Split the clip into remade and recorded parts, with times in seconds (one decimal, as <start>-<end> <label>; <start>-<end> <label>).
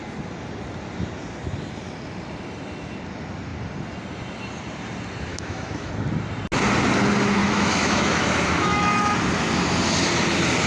0.0-5.3 recorded; 5.3-5.9 remade; 5.9-7.4 recorded; 7.4-9.0 remade; 9.0-10.7 recorded